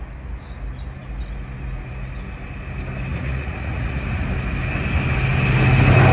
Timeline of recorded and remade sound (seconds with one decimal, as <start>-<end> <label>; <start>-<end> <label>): 0.0-3.1 recorded; 3.1-4.0 remade; 4.0-6.1 recorded